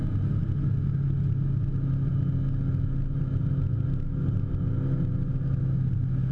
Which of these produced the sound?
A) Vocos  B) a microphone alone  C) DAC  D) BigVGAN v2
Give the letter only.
B